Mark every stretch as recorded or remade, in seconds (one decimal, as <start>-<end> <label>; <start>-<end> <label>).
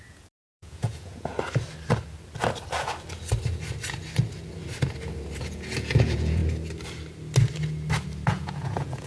0.0-1.3 remade; 1.3-5.4 recorded; 5.4-6.4 remade; 6.4-8.3 recorded; 8.3-9.1 remade